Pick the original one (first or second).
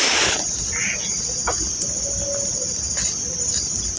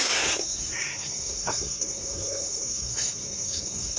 first